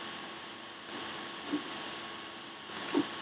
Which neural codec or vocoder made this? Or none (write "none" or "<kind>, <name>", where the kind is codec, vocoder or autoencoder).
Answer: none